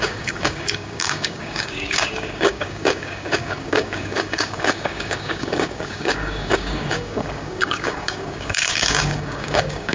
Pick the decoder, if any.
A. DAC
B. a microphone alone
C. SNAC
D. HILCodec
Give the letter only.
A